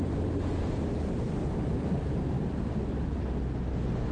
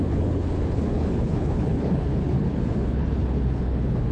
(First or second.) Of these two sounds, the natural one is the first